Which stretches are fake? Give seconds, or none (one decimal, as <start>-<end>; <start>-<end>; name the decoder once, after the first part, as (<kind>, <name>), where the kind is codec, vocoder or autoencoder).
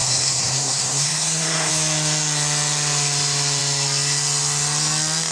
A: 0.0-1.7 (codec, SNAC)